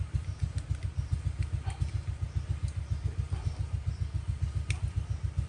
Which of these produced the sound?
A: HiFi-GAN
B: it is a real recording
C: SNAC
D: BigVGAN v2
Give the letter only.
B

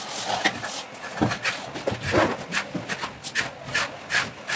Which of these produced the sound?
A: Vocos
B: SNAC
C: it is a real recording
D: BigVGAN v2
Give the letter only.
C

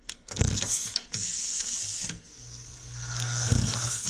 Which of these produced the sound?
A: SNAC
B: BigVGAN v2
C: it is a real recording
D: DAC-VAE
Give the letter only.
A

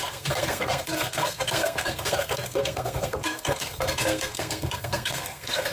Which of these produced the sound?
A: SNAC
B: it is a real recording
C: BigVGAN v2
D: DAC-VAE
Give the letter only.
A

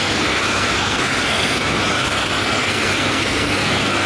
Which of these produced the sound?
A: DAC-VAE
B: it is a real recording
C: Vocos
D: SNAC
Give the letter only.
D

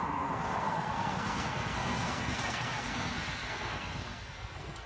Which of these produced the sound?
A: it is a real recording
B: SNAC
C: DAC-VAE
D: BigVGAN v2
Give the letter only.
B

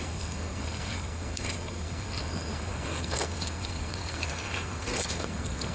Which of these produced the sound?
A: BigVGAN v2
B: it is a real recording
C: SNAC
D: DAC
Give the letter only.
C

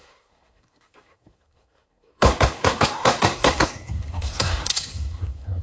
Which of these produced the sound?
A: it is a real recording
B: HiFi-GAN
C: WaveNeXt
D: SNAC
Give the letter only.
D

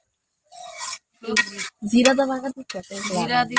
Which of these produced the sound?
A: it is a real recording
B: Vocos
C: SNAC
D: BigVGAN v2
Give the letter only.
A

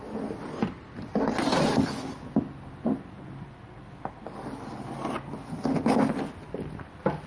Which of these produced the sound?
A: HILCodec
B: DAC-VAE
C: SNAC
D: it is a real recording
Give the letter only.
D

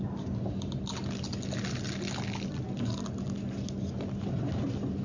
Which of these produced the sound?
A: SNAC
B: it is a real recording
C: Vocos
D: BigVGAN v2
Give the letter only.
B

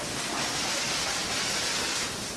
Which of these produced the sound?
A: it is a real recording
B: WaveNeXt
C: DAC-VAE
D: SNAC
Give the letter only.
A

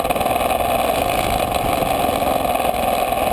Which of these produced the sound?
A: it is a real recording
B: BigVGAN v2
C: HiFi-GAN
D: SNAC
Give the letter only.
A